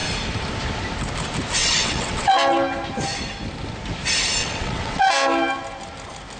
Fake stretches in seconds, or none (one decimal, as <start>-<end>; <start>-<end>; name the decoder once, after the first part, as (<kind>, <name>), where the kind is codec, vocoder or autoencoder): 1.6-2.3 (vocoder, WaveNeXt); 4.4-5.0